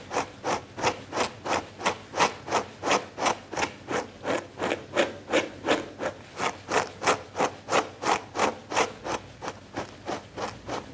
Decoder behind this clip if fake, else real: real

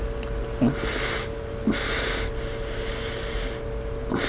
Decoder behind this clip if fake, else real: real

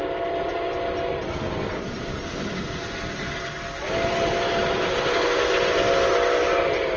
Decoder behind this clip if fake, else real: real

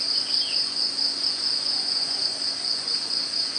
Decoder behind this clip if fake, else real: fake, vocoder, Vocos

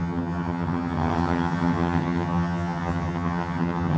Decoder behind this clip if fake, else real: fake, vocoder, HiFi-GAN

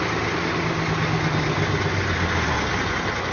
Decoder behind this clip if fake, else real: real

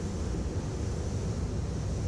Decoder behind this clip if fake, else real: real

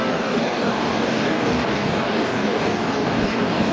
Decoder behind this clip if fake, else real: fake, codec, DAC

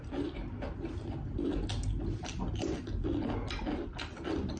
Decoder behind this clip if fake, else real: real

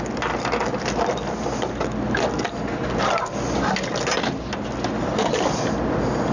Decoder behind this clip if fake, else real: real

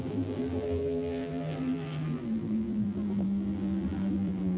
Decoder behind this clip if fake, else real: fake, vocoder, BigVGAN v2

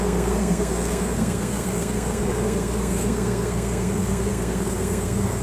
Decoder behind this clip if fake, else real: fake, codec, SNAC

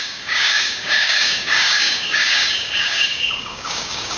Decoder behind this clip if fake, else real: fake, codec, DAC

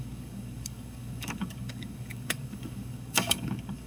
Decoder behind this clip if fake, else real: fake, codec, DAC